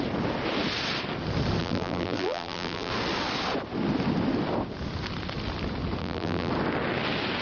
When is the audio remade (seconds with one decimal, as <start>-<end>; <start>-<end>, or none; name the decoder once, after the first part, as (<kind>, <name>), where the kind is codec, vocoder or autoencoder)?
1.6-2.9 (vocoder, BigVGAN v2); 6.0-6.5